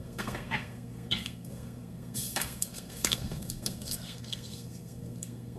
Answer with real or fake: fake